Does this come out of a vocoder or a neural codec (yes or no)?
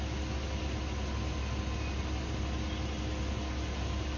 no